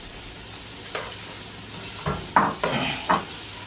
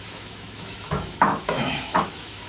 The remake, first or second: second